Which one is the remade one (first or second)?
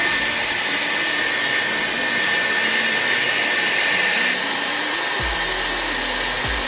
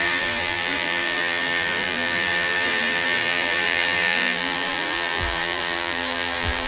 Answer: second